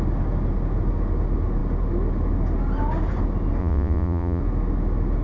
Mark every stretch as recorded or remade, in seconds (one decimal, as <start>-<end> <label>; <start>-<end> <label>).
0.0-3.6 recorded; 3.6-4.4 remade; 4.4-5.2 recorded